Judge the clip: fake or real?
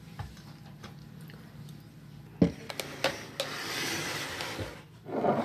real